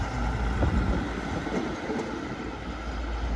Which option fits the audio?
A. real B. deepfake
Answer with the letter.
A